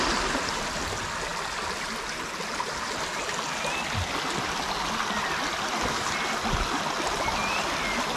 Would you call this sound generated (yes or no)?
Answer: no